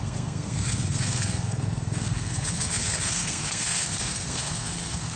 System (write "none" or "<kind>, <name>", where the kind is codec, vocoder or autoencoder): codec, SNAC